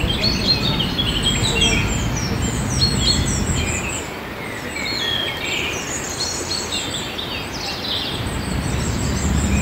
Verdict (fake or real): real